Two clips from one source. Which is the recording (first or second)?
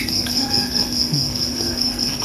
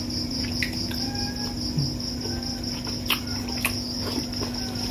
second